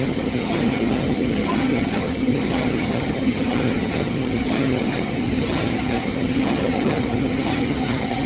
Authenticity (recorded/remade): remade